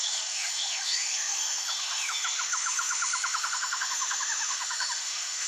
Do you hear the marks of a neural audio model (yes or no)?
yes